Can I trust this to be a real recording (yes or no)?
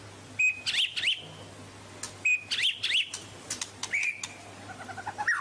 yes